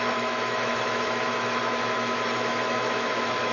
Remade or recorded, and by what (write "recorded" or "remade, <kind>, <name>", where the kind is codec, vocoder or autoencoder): remade, autoencoder, DAC-VAE